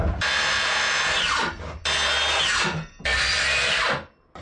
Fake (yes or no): no